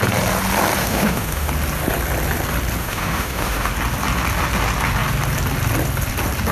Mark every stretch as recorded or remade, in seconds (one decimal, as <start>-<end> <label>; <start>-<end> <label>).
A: 0.0-0.8 recorded; 0.8-1.5 remade; 1.5-2.8 recorded; 2.8-3.7 remade; 3.7-6.5 recorded